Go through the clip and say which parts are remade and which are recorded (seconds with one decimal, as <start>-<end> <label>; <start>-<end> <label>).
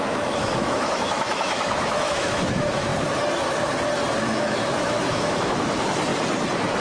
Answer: 0.0-2.9 remade; 2.9-4.2 recorded; 4.2-6.1 remade; 6.1-6.8 recorded